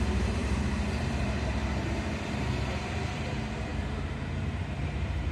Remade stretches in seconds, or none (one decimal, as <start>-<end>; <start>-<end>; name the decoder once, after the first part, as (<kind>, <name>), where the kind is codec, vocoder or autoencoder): 0.0-5.3 (vocoder, BigVGAN v2)